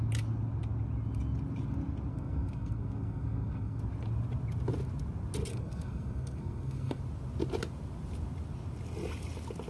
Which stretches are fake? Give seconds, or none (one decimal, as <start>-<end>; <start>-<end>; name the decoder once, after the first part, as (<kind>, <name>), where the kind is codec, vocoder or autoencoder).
2.1-3.8 (codec, SNAC); 5.5-7.0